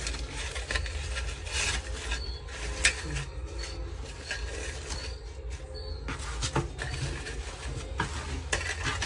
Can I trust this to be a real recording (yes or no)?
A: yes